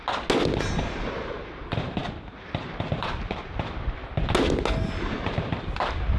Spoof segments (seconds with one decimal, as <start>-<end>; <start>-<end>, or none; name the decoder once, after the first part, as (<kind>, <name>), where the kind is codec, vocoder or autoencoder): 0.6-4.0 (vocoder, BigVGAN v2); 5.0-6.2